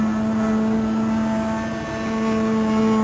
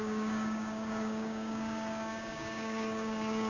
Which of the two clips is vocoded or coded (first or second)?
second